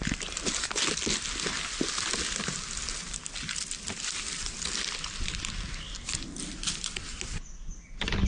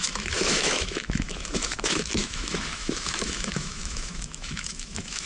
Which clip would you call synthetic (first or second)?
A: second